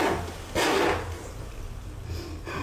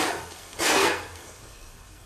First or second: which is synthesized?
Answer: second